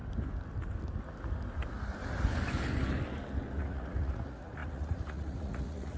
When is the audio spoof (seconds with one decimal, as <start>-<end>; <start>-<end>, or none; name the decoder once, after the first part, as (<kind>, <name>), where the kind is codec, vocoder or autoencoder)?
3.6-6.0 (vocoder, Vocos)